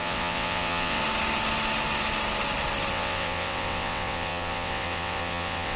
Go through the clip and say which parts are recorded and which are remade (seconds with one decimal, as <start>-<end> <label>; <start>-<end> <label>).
0.0-1.0 remade; 1.0-2.9 recorded; 2.9-5.8 remade

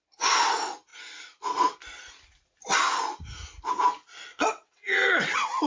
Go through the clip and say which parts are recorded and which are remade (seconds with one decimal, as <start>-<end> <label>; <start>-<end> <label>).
0.0-4.3 recorded; 4.3-5.7 remade

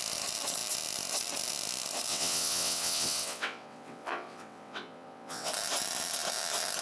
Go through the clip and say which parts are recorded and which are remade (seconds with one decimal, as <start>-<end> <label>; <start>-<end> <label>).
0.0-2.1 recorded; 2.1-5.5 remade; 5.5-6.8 recorded

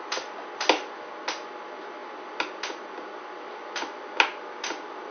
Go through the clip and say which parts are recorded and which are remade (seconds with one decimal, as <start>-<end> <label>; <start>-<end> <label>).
0.0-5.1 recorded

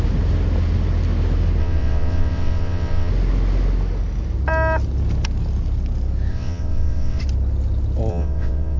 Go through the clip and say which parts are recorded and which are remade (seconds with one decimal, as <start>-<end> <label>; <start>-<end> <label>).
0.0-1.6 recorded; 1.6-3.1 remade; 3.1-6.3 recorded; 6.3-7.2 remade; 7.2-8.1 recorded; 8.1-8.8 remade

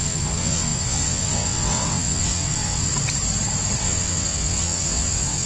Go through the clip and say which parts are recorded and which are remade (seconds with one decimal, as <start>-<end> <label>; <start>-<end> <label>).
0.0-2.9 remade; 2.9-3.8 recorded; 3.8-5.5 remade